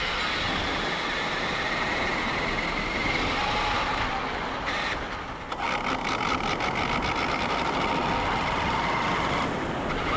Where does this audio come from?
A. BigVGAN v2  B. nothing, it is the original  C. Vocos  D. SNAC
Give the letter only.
B